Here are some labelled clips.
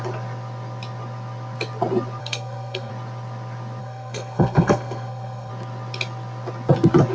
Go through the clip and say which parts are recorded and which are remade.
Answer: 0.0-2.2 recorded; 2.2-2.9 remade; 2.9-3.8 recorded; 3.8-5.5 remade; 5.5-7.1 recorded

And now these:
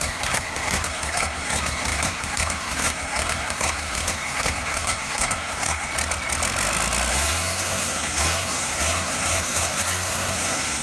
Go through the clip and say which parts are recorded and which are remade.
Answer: 0.0-5.9 remade; 5.9-7.1 recorded; 7.1-10.8 remade